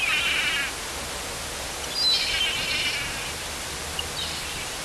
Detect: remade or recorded recorded